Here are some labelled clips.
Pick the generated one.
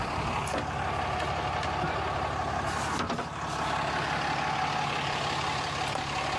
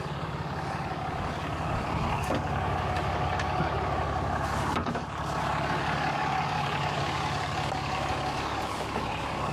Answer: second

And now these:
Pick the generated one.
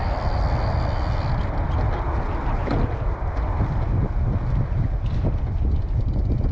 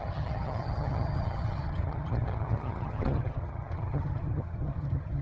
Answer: second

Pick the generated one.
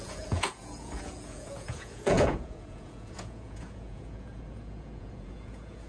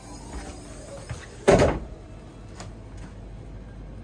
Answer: first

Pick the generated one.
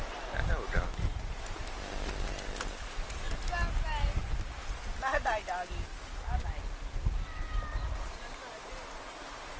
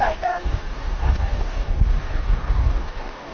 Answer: second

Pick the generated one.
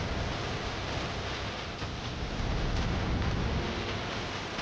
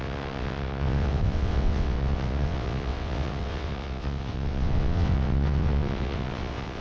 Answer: second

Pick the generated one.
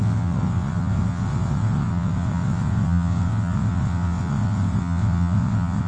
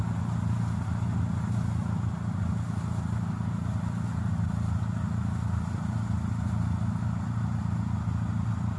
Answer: first